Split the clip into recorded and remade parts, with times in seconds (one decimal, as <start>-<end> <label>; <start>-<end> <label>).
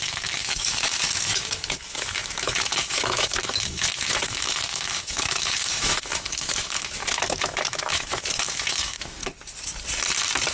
0.0-9.2 remade; 9.2-10.5 recorded